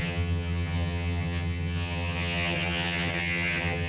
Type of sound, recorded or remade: remade